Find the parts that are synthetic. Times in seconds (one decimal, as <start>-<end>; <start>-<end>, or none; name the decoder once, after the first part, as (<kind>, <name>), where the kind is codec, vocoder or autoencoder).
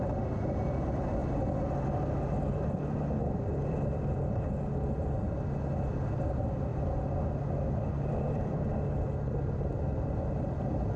3.2-4.5 (vocoder, BigVGAN v2); 6.7-7.2